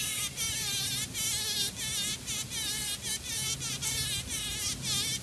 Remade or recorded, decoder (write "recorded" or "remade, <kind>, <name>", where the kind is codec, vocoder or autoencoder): recorded